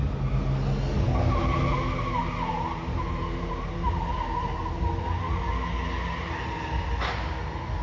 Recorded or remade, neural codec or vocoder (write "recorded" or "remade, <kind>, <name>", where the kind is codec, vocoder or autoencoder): recorded